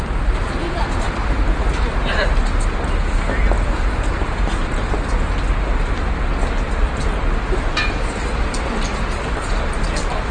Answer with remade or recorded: recorded